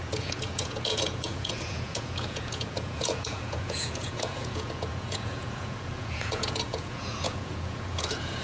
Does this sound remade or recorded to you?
remade